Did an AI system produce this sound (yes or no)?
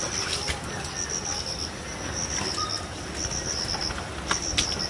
no